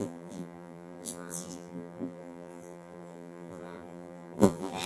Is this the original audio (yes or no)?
no